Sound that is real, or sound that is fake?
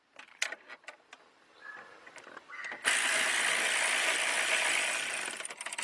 real